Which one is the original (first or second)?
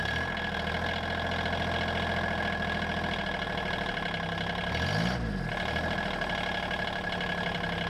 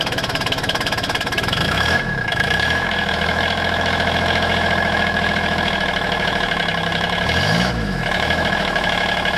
first